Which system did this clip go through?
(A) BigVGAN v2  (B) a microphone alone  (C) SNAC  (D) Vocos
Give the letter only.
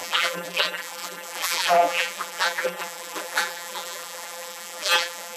A